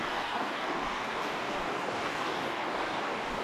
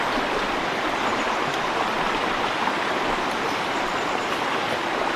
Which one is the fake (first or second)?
first